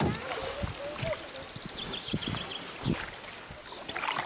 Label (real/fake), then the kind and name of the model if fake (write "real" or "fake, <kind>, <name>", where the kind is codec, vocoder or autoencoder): real